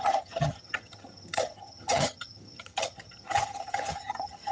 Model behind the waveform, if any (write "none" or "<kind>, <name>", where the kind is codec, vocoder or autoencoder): vocoder, HiFi-GAN